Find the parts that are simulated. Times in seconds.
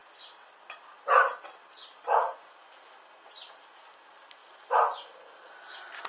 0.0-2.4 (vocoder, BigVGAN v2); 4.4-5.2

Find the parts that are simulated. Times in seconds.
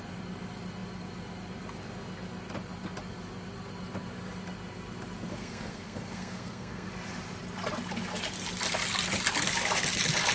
5.3-6.9 (codec, SNAC)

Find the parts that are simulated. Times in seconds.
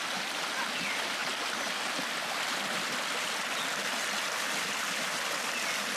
none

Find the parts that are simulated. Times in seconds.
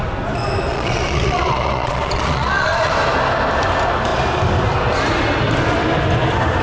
0.7-2.9 (vocoder, Vocos)